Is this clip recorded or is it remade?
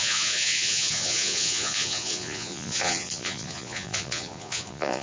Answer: remade